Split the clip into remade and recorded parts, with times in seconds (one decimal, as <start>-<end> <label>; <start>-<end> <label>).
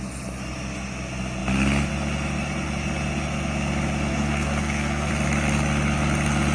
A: 0.0-4.1 recorded; 4.1-5.1 remade; 5.1-6.5 recorded